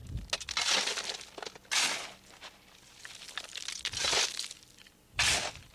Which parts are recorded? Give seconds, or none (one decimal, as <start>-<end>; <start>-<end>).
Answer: 0.0-5.7

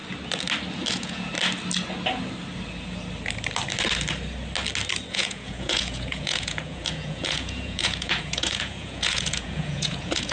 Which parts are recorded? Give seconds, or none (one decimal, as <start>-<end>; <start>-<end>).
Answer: 0.0-0.9; 1.3-5.1

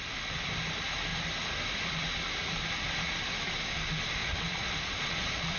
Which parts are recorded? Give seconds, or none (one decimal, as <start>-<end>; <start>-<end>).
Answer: 0.0-4.2

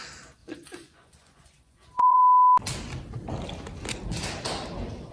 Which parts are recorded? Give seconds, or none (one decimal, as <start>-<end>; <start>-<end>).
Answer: 0.0-0.4; 2.2-5.1

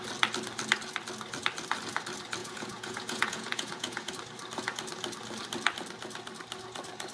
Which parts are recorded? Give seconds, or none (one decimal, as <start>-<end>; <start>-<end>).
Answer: 0.0-2.4; 4.1-7.1

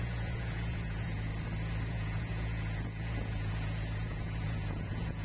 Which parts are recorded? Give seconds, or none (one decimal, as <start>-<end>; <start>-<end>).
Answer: 1.3-1.9

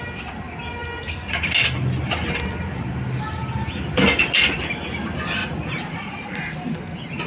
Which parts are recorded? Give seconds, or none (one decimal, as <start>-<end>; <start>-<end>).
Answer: 0.0-5.4; 6.4-7.3

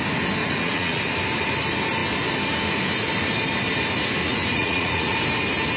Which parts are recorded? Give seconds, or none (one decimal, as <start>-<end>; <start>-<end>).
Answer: 0.0-0.4; 1.0-4.2; 5.2-5.8